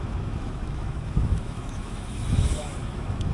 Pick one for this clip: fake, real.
fake